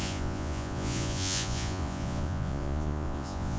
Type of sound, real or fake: fake